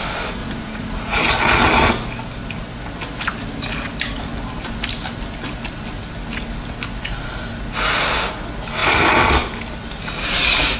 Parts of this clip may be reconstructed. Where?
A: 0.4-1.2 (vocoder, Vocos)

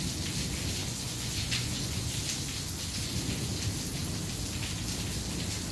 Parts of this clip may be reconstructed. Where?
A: 0.8-2.1 (vocoder, Vocos); 2.9-3.5

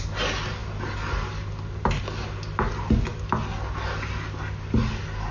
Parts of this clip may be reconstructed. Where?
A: none

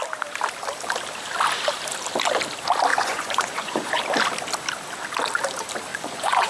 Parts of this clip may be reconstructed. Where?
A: 2.9-4.0 (vocoder, Vocos); 5.9-6.5

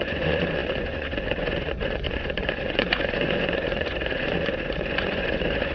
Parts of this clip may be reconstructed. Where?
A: 0.0-5.7 (vocoder, Vocos)

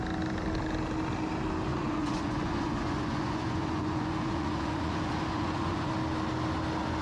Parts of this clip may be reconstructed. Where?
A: 1.7-5.9 (vocoder, Vocos)